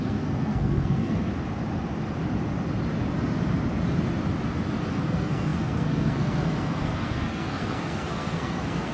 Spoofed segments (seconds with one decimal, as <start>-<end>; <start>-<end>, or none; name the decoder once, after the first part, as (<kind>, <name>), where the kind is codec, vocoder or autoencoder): 0.0-1.3 (codec, SNAC); 4.9-8.9

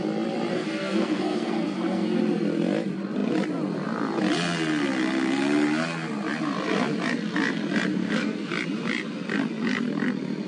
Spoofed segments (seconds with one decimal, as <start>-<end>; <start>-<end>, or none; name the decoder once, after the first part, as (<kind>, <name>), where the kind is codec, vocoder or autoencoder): 0.5-2.2 (codec, SNAC); 7.9-8.5

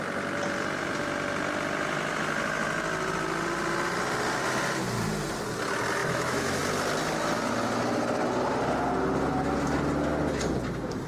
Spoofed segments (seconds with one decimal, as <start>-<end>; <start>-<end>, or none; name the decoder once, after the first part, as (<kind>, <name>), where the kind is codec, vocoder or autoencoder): 6.0-6.6 (autoencoder, DAC-VAE)

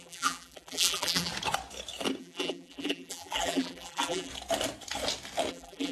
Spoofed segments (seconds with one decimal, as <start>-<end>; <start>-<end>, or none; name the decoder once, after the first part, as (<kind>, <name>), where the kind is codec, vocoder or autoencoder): 0.0-1.3 (vocoder, BigVGAN v2); 2.2-4.3; 5.5-5.9

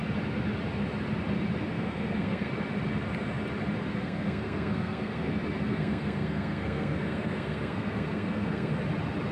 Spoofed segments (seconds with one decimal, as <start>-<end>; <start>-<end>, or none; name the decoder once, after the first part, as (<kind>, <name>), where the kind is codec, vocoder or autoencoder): 1.7-2.5 (codec, SNAC); 3.9-5.3; 5.7-8.7

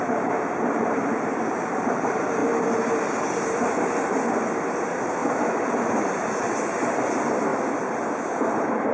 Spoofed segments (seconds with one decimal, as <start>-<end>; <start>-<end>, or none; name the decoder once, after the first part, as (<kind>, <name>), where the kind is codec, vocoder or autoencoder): 0.0-2.4 (vocoder, BigVGAN v2); 4.6-7.5; 8.5-8.9

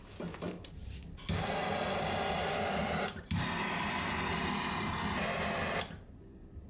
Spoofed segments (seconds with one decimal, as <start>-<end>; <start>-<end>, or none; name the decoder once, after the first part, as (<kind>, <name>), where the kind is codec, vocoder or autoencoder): none